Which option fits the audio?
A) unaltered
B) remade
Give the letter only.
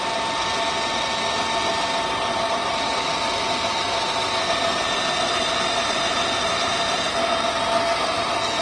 A